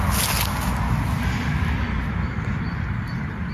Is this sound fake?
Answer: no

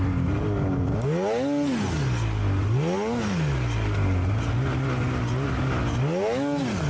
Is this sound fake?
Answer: no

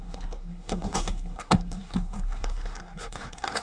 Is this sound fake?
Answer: yes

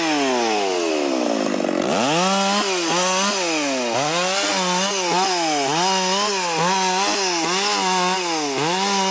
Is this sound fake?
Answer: no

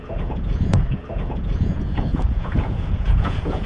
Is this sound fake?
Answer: yes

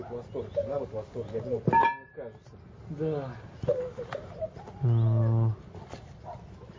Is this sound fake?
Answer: no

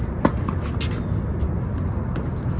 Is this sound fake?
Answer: no